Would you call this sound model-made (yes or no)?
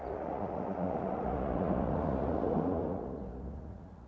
yes